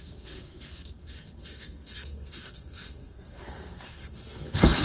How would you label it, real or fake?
fake